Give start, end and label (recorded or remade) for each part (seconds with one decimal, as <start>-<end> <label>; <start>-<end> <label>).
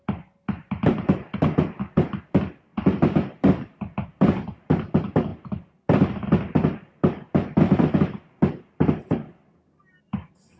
0.0-10.6 recorded